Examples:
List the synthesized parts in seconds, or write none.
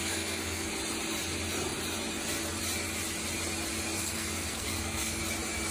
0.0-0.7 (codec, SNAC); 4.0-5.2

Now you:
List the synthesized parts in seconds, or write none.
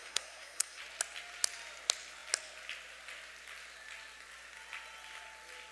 0.0-0.8 (codec, SNAC)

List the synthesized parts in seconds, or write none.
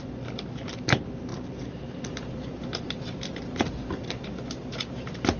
none